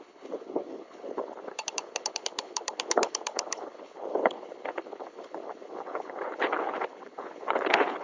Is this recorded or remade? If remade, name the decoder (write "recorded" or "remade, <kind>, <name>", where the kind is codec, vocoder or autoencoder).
remade, codec, HILCodec